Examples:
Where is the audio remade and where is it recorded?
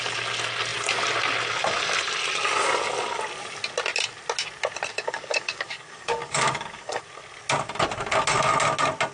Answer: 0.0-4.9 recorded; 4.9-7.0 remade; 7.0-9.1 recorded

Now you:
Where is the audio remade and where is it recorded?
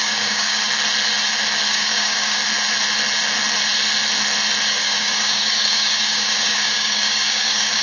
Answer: 0.0-0.6 remade; 0.6-1.7 recorded; 1.7-2.4 remade; 2.4-4.7 recorded; 4.7-7.8 remade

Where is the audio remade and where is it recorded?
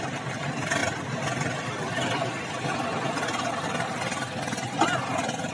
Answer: 0.0-5.5 recorded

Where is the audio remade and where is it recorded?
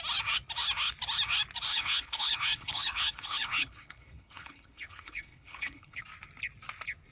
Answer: 0.0-1.7 recorded; 1.7-6.0 remade; 6.0-7.1 recorded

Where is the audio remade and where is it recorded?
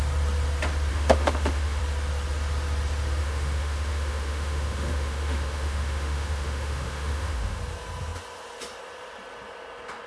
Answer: 0.0-0.9 recorded; 0.9-1.8 remade; 1.8-3.2 recorded; 3.2-7.6 remade; 7.6-10.1 recorded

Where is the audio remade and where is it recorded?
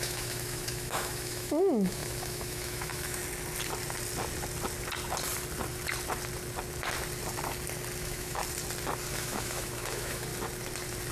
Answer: 0.0-3.2 remade; 3.2-8.0 recorded; 8.0-8.4 remade; 8.4-9.1 recorded; 9.1-10.3 remade; 10.3-11.1 recorded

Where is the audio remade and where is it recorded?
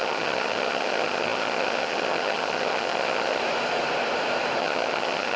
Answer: 0.0-3.4 remade; 3.4-4.6 recorded; 4.6-5.4 remade